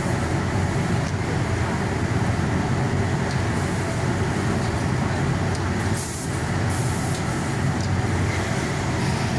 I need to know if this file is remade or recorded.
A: recorded